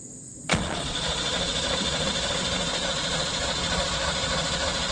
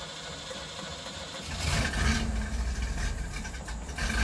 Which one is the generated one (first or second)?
first